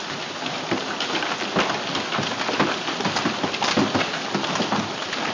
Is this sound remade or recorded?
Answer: recorded